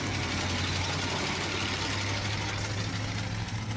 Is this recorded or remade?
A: recorded